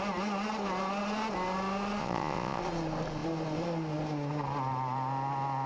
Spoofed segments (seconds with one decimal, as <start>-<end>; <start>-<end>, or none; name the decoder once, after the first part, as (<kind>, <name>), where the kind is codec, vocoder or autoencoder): 2.0-2.6 (vocoder, Vocos)